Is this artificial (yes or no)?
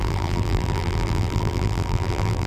yes